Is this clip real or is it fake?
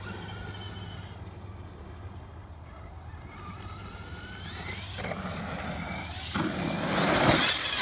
real